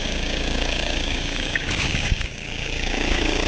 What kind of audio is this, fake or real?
fake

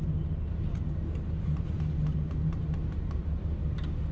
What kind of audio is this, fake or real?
real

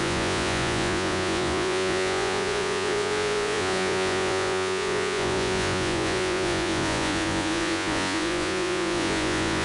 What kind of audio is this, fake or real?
fake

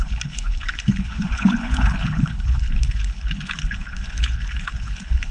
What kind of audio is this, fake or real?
fake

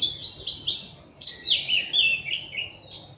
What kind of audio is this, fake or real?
real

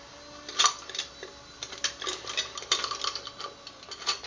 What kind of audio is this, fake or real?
real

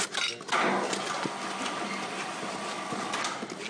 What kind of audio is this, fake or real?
real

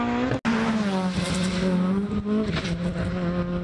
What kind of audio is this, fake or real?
real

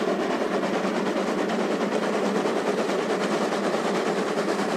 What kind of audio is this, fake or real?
real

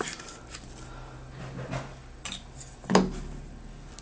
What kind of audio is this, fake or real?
real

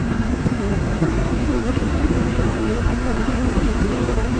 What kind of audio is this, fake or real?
fake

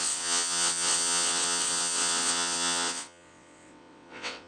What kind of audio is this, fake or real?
fake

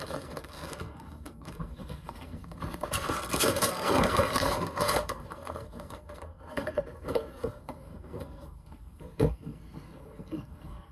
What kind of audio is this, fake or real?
fake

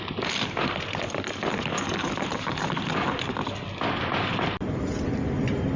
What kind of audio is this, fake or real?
fake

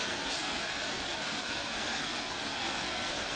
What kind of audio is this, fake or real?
fake